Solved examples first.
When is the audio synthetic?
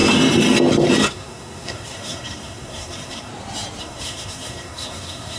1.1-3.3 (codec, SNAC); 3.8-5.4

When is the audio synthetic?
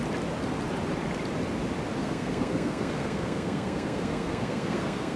2.0-5.2 (codec, SNAC)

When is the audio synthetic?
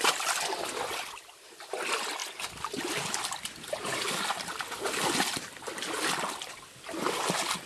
none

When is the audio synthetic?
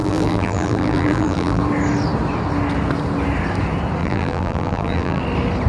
0.0-1.6 (vocoder, BigVGAN v2); 4.0-5.2